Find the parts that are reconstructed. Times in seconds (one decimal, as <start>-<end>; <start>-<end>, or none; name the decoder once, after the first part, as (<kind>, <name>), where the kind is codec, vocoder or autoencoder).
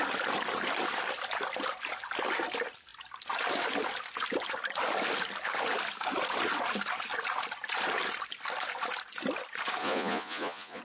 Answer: 9.8-10.8 (vocoder, Vocos)